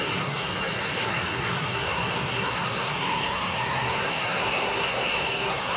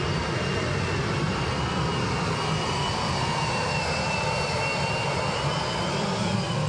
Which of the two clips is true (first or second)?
second